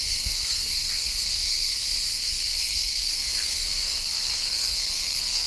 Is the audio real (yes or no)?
no